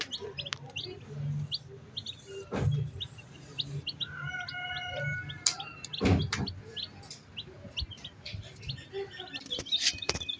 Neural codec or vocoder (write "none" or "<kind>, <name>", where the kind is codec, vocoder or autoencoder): none